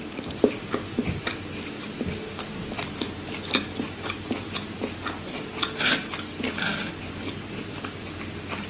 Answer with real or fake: fake